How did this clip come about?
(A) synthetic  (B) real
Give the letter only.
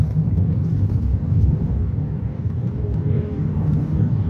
A